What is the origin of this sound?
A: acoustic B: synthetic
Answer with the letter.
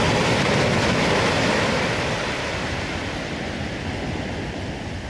A